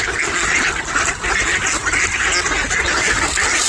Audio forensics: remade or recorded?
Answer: recorded